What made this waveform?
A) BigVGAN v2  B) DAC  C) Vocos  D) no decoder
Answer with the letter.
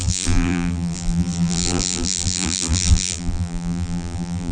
A